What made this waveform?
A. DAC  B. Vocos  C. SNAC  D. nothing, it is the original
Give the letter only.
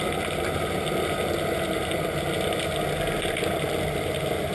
D